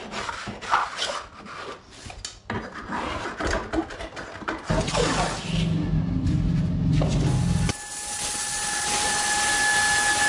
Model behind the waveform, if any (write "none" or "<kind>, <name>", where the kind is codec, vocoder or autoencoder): none